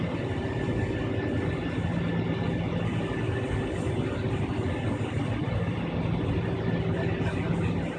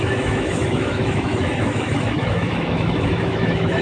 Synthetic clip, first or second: second